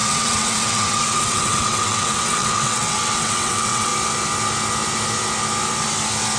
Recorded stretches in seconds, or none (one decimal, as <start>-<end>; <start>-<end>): 3.9-6.4